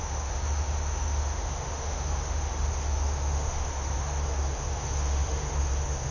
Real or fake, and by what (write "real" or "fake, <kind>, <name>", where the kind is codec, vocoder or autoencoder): fake, autoencoder, DAC-VAE